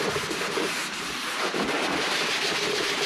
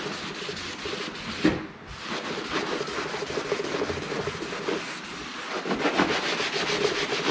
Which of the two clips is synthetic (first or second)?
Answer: first